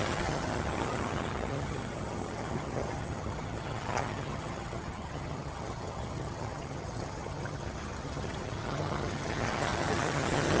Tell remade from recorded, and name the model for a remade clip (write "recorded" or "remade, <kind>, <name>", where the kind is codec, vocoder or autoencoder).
remade, vocoder, HiFi-GAN